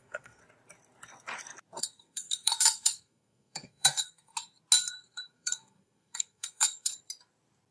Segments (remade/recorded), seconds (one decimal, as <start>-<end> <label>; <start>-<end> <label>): 0.0-0.4 remade; 0.4-1.8 recorded; 1.8-4.3 remade; 4.3-4.9 recorded; 4.9-6.9 remade; 6.9-7.7 recorded